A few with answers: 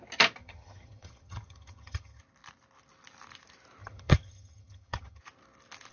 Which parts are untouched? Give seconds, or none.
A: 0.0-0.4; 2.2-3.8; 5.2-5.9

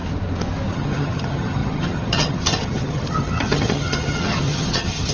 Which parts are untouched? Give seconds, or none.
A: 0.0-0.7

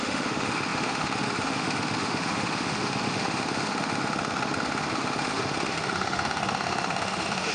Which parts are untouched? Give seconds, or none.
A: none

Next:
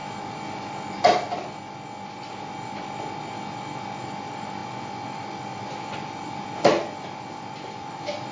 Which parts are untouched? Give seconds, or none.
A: 0.0-3.5

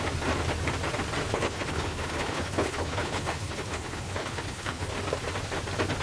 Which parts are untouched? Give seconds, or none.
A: 0.0-1.3; 4.9-6.0